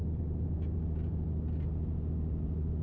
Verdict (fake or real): real